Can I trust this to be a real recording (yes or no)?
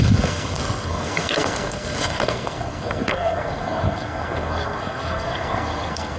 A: no